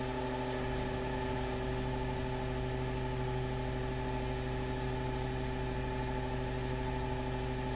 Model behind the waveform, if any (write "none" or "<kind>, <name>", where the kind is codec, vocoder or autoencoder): none